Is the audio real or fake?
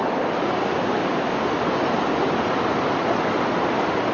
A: real